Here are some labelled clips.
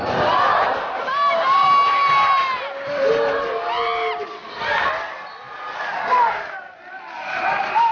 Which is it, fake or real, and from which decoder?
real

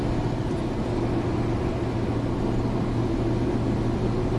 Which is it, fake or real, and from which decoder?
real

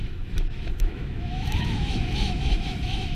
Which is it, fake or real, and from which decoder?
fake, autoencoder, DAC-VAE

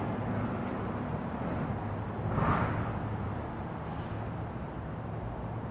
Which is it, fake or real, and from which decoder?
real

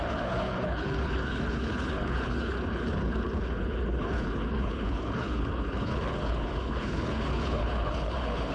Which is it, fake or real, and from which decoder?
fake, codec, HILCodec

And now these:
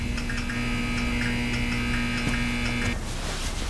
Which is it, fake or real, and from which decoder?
real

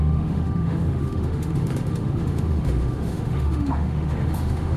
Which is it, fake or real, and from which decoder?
fake, autoencoder, DAC-VAE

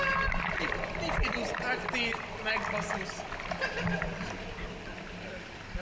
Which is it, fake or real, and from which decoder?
real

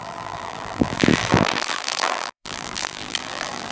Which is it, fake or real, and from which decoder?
fake, vocoder, BigVGAN v2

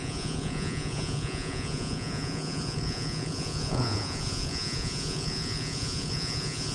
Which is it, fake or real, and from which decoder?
fake, vocoder, Vocos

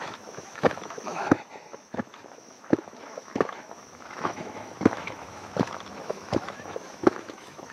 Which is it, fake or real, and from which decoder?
fake, autoencoder, DAC-VAE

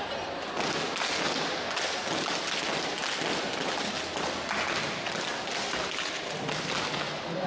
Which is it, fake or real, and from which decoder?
real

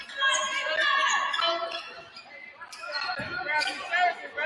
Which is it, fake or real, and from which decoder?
real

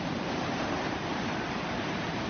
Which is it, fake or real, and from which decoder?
fake, vocoder, BigVGAN v2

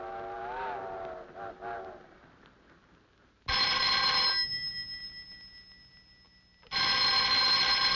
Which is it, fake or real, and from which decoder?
real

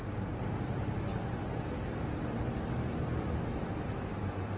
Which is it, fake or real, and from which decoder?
real